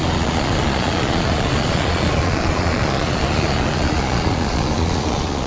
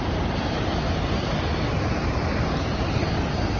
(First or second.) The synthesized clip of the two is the first